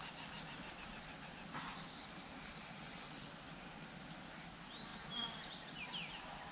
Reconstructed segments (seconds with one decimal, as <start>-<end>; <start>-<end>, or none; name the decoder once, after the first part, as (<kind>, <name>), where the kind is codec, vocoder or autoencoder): 2.6-3.3 (vocoder, WaveNeXt)